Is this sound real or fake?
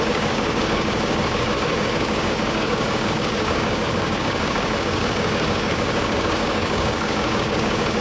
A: fake